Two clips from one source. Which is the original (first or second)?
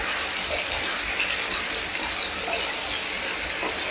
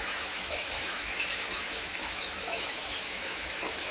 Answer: first